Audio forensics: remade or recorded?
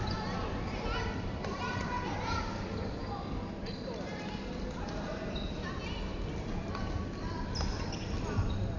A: recorded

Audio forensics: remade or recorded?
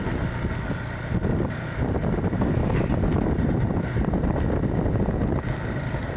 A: recorded